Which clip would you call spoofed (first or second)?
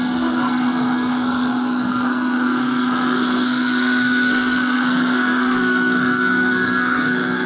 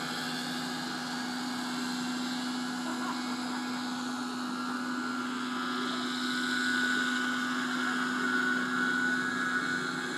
first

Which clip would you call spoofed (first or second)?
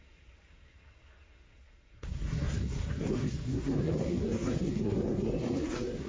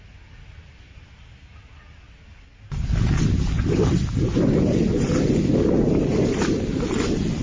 first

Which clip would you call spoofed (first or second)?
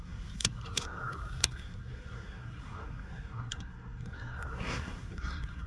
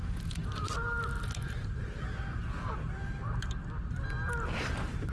first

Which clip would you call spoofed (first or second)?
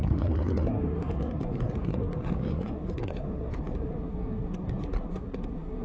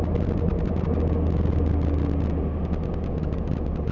first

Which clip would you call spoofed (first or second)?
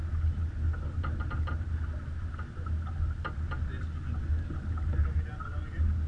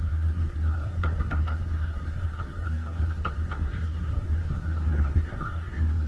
second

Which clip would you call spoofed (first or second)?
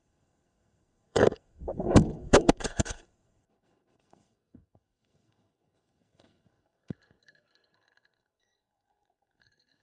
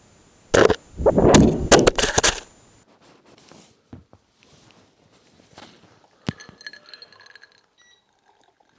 first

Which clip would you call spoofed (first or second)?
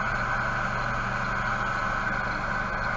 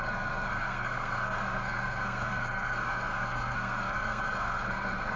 second